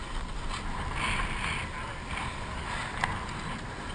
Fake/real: real